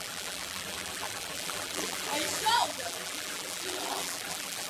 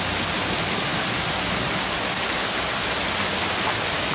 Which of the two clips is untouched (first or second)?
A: second